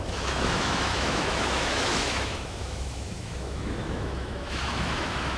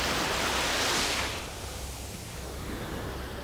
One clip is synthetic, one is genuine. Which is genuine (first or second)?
second